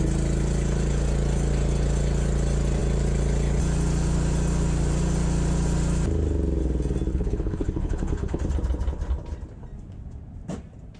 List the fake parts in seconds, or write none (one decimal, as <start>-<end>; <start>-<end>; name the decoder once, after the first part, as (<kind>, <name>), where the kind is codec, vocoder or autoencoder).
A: 7.1-8.4 (codec, HILCodec)